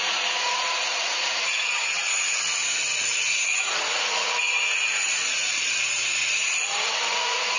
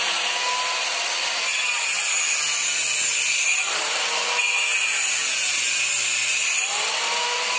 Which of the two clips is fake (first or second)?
first